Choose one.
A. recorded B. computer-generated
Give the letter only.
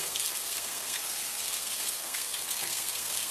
B